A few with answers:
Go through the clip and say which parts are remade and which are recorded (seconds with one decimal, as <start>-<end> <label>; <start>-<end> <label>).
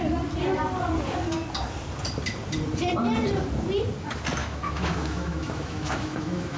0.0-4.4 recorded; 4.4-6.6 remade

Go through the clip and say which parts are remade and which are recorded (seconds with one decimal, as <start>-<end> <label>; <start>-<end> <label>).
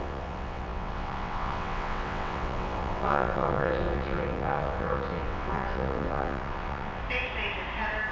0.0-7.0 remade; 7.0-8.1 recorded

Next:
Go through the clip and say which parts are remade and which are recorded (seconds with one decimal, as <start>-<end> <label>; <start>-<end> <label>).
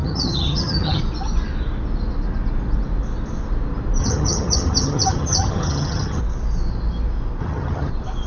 0.0-1.0 remade; 1.0-4.0 recorded; 4.0-6.2 remade; 6.2-7.4 recorded; 7.4-7.9 remade; 7.9-8.3 recorded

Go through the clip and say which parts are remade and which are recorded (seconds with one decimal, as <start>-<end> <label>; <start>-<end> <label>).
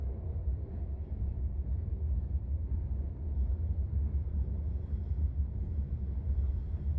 0.0-0.4 recorded; 0.4-2.3 remade; 2.3-3.5 recorded; 3.5-4.3 remade; 4.3-7.0 recorded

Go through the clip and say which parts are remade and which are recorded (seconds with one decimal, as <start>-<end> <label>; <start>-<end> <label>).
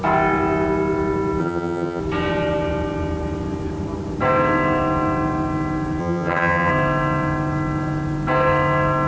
0.0-1.4 recorded; 1.4-2.0 remade; 2.0-6.0 recorded; 6.0-6.7 remade; 6.7-9.1 recorded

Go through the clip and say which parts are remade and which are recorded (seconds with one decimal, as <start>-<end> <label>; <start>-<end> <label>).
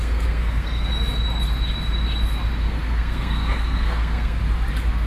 0.0-0.9 remade; 0.9-2.6 recorded; 2.6-4.4 remade; 4.4-5.1 recorded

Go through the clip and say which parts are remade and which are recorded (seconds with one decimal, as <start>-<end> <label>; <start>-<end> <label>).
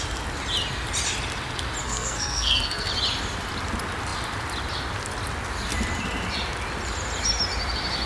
0.0-1.8 recorded; 1.8-2.9 remade; 2.9-8.1 recorded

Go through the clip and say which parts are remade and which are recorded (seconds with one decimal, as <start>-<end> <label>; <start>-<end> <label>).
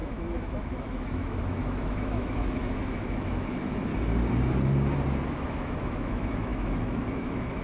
0.0-3.9 remade; 3.9-5.3 recorded; 5.3-7.6 remade